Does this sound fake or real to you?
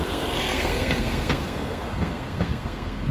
fake